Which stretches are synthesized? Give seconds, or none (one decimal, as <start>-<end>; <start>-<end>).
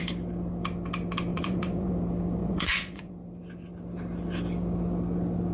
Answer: 1.3-1.9; 2.4-3.1